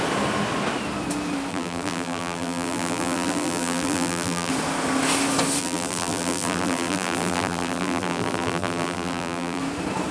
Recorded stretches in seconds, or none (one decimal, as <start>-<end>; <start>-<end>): 0.0-1.5; 4.5-5.6; 9.6-10.1